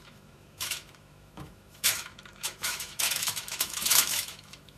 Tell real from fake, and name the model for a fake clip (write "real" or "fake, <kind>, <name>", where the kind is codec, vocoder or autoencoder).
fake, autoencoder, DAC-VAE